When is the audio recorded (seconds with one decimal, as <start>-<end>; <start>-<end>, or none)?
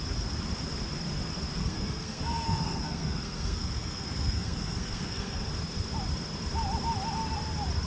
0.0-1.6; 5.5-7.9